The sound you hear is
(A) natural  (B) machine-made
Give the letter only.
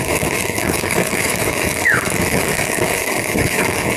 B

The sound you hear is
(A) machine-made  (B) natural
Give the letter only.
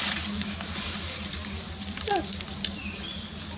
B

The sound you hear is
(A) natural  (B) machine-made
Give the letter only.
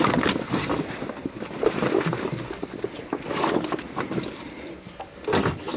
A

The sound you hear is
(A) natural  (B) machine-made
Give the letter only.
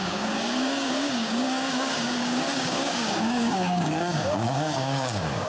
B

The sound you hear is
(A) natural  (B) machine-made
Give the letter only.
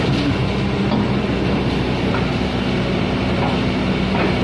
A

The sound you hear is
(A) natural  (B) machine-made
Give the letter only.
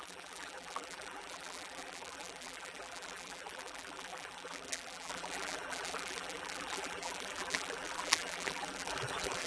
B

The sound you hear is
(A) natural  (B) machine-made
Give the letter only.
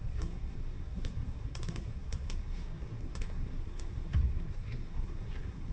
B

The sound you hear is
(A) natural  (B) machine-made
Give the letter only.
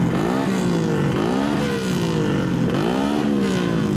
A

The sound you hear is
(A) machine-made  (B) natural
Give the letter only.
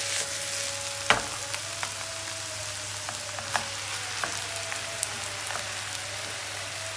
B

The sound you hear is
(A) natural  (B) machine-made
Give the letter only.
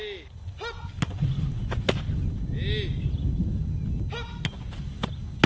A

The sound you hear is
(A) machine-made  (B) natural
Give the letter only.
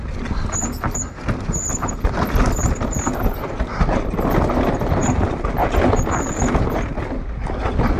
B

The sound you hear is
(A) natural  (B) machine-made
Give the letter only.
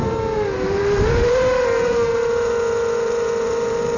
B